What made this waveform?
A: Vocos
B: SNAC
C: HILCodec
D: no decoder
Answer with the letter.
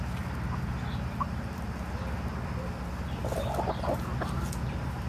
D